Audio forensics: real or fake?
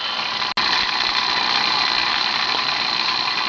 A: real